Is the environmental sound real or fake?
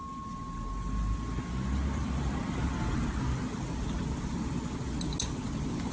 real